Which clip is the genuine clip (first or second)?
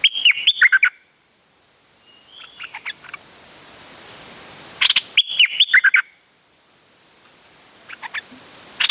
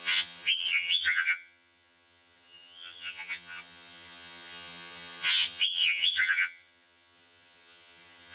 first